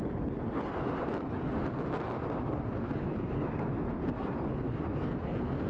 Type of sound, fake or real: real